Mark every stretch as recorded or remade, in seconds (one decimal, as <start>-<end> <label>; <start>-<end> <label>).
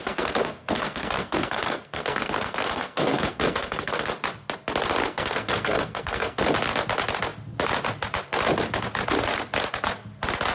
0.0-4.1 remade; 4.1-5.0 recorded; 5.0-6.4 remade; 6.4-10.5 recorded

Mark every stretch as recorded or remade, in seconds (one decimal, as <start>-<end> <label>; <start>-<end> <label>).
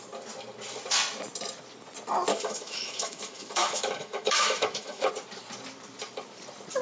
0.0-2.3 recorded; 2.3-5.1 remade; 5.1-6.8 recorded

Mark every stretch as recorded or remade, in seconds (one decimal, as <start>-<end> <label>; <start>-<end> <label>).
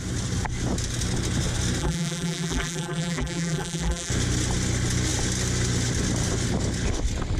0.0-1.8 recorded; 1.8-4.1 remade; 4.1-7.4 recorded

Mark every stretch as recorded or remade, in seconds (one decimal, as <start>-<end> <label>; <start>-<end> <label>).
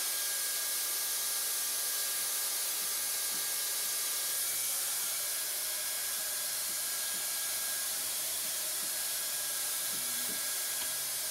0.0-6.0 recorded; 6.0-6.9 remade; 6.9-7.9 recorded; 7.9-11.3 remade